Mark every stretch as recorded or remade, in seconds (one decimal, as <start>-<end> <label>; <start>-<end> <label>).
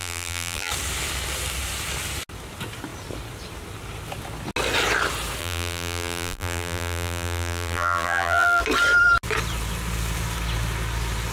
0.0-0.7 remade; 0.7-5.4 recorded; 5.4-8.6 remade; 8.6-11.3 recorded